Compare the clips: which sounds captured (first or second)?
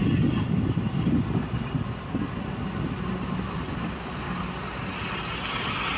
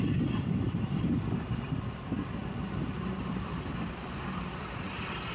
first